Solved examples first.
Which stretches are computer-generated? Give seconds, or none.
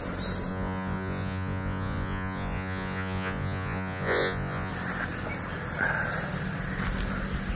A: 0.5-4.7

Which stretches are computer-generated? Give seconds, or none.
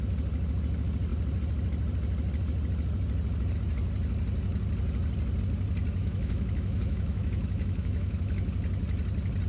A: 6.0-8.4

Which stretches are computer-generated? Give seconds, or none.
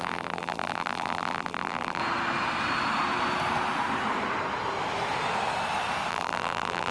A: 0.0-2.0; 6.1-6.9